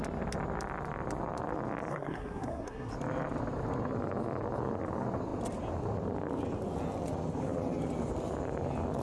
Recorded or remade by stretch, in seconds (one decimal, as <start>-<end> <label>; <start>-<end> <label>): 0.0-1.9 recorded; 1.9-2.9 remade; 2.9-9.0 recorded